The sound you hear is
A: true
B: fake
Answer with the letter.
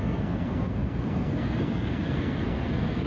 B